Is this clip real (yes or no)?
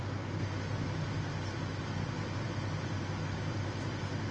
yes